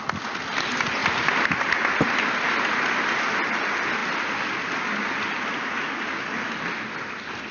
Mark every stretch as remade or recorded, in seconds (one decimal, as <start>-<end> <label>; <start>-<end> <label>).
0.0-7.5 recorded